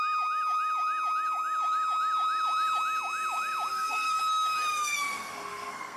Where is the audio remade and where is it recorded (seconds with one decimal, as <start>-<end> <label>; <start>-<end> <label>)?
0.0-3.7 recorded; 3.7-4.2 remade; 4.2-4.7 recorded; 4.7-6.0 remade